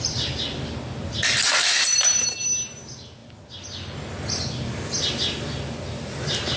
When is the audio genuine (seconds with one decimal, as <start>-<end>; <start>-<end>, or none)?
0.0-6.6